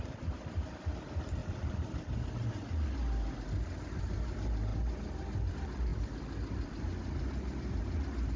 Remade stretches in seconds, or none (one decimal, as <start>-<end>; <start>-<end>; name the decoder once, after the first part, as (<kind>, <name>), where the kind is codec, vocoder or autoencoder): 1.4-2.3 (vocoder, BigVGAN v2); 4.7-5.5